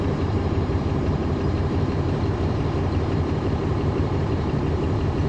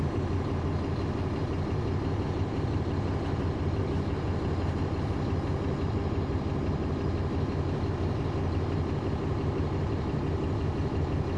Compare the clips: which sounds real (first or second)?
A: second